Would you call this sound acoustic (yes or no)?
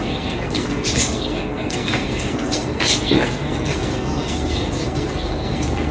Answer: no